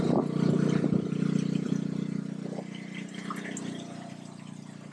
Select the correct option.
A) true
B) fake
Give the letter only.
A